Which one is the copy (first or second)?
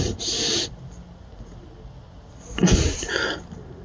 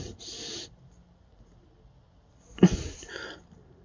second